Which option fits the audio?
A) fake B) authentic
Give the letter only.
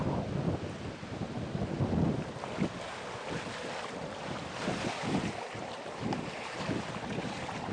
B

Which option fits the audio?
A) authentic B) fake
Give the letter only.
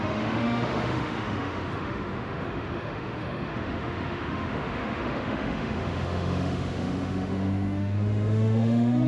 B